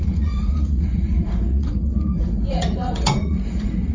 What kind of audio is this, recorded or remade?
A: remade